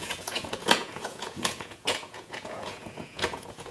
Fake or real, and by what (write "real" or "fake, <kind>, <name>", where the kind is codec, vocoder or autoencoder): fake, vocoder, Vocos